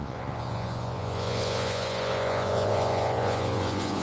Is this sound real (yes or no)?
no